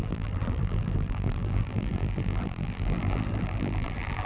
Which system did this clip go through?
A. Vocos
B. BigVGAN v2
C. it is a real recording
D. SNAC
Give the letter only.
B